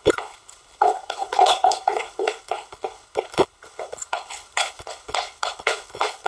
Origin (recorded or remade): remade